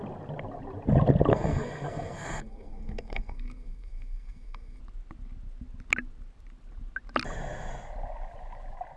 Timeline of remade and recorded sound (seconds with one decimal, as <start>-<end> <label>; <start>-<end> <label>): 0.0-1.3 recorded; 1.3-4.8 remade; 4.8-9.0 recorded